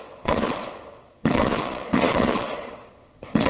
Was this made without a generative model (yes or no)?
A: no